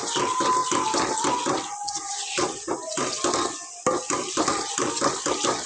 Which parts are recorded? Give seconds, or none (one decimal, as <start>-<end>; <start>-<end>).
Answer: 0.0-5.7